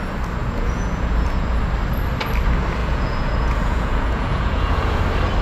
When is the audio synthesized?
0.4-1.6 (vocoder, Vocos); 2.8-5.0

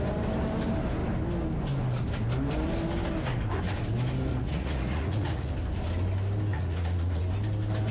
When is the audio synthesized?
4.3-5.5 (vocoder, Vocos); 6.5-7.2